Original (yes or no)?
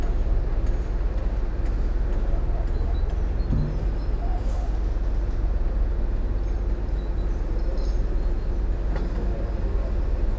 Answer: yes